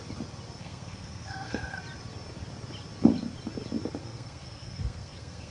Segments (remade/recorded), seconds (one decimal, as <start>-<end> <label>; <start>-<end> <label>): 0.0-0.6 recorded; 0.6-1.8 remade; 1.8-4.0 recorded; 4.0-5.5 remade